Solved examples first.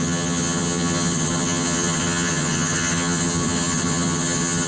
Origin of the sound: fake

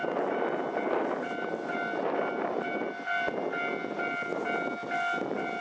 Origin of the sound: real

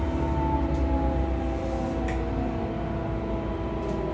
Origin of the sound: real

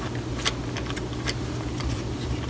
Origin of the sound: real